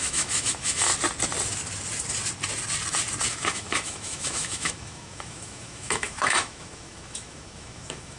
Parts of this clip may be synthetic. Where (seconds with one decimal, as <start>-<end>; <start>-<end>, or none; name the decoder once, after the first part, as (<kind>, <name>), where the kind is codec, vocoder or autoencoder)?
0.0-0.9 (autoencoder, DAC-VAE); 3.3-8.2